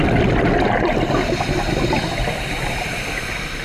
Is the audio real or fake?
real